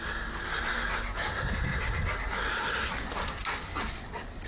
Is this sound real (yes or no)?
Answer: yes